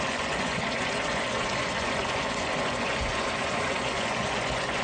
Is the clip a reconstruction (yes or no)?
yes